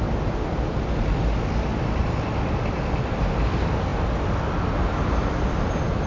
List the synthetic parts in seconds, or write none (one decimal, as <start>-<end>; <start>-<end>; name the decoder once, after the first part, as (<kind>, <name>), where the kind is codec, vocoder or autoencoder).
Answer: none